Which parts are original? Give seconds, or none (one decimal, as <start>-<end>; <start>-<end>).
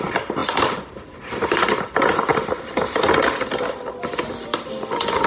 0.0-5.3